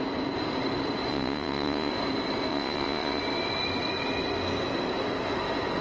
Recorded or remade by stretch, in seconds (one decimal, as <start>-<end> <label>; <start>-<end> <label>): 0.0-1.1 recorded; 1.1-1.9 remade; 1.9-2.5 recorded; 2.5-3.2 remade; 3.2-5.8 recorded